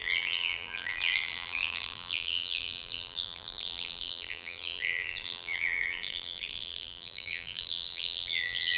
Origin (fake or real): fake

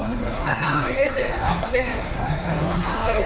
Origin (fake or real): fake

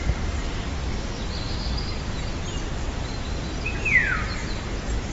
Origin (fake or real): real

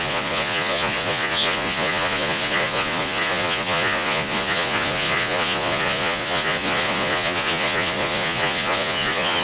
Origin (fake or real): fake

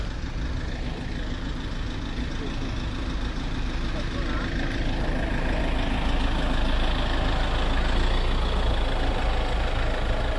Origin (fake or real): real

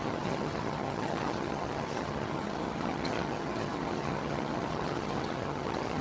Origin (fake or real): fake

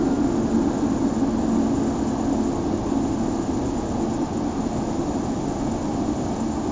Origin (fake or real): real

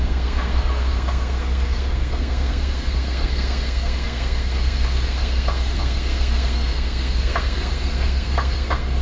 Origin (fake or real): fake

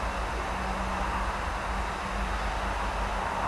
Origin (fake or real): real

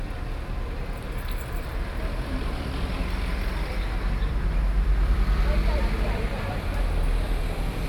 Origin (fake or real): fake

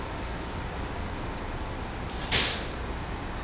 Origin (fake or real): fake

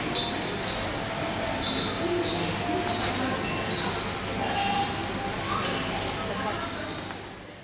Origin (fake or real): real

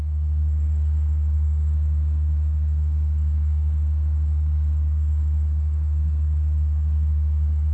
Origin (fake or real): fake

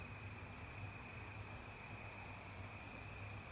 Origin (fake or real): real